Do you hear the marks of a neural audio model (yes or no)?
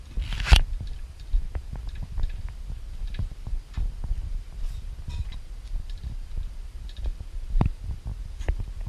yes